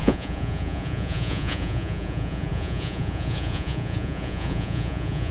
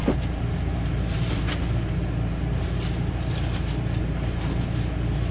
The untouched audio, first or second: second